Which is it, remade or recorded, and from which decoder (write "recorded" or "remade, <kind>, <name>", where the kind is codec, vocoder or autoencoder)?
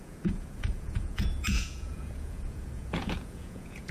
remade, vocoder, Vocos